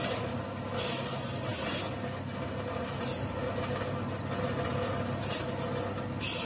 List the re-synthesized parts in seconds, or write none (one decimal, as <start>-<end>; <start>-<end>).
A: 2.8-3.3